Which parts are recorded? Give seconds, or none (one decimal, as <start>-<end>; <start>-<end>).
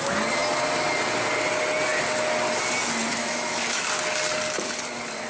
0.0-3.1; 3.8-5.3